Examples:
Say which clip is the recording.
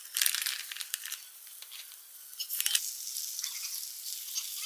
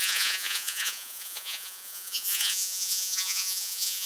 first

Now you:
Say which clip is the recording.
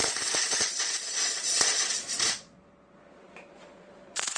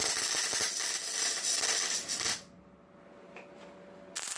second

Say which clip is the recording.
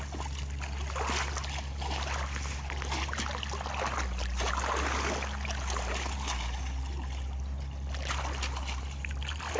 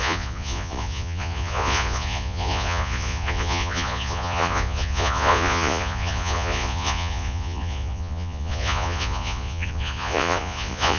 first